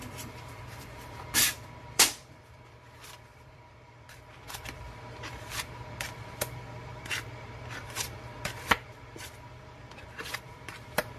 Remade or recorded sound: remade